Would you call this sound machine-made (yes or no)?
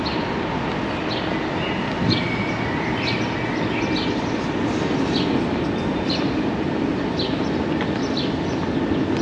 no